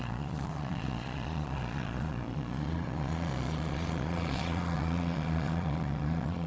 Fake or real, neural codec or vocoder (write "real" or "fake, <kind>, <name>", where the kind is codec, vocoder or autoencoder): fake, vocoder, Vocos